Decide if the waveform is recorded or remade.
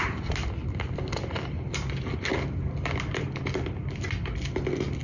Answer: recorded